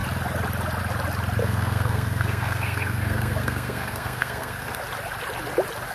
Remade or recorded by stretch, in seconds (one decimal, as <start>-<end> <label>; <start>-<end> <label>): 0.0-1.4 recorded; 1.4-4.8 remade; 4.8-5.9 recorded